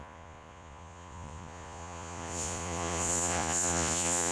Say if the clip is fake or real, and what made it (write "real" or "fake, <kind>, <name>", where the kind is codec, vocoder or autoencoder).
fake, vocoder, Vocos